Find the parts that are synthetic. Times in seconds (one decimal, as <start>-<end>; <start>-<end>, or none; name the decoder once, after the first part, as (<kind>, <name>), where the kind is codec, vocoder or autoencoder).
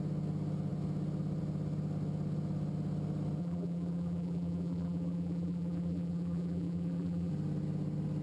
3.4-7.3 (vocoder, BigVGAN v2)